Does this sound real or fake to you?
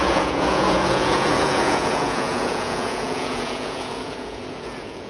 fake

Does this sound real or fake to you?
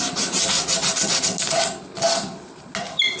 real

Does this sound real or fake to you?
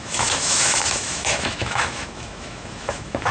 fake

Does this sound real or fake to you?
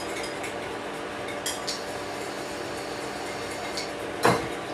real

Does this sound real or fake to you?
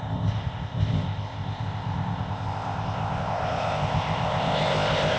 fake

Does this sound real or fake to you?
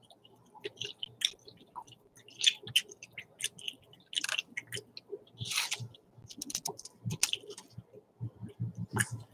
real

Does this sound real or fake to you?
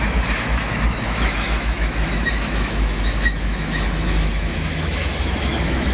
fake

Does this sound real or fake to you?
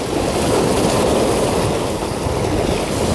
real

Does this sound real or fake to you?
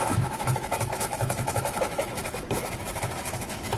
fake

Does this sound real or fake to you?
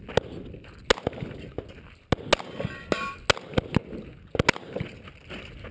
real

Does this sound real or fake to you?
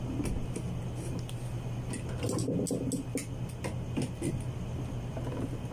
real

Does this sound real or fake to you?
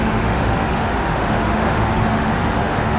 fake